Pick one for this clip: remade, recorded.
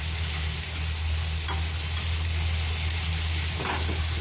recorded